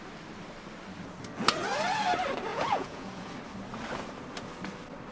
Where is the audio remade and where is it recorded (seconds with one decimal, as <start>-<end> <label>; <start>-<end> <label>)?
0.0-2.5 recorded; 2.5-3.3 remade; 3.3-5.1 recorded